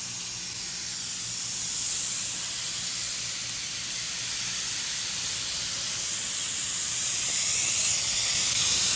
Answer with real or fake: fake